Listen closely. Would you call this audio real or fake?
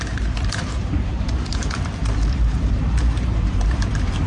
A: fake